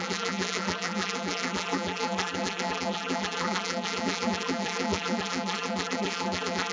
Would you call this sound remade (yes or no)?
yes